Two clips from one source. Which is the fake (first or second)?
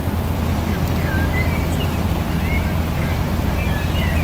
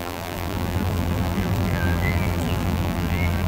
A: second